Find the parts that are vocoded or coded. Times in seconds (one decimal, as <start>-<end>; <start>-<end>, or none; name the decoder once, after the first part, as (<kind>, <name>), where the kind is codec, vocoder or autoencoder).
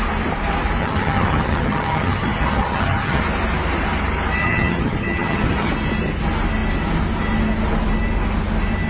0.8-3.2 (vocoder, HiFi-GAN); 4.4-5.7